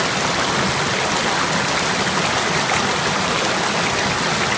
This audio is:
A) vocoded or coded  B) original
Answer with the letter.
B